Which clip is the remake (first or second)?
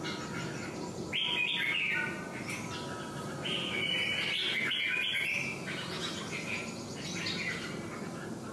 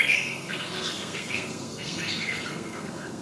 second